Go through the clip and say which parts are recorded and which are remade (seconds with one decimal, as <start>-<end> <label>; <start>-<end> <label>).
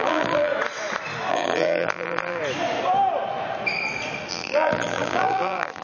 0.0-0.5 remade; 0.5-1.3 recorded; 1.3-2.4 remade; 2.4-4.3 recorded; 4.3-5.8 remade